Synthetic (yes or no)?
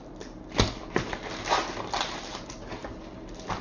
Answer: no